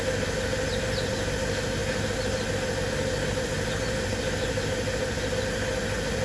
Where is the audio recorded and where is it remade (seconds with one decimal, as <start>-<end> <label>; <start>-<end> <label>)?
0.0-6.2 recorded